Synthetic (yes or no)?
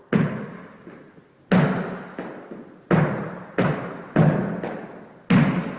no